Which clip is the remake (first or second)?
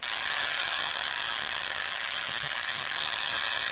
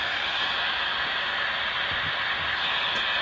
first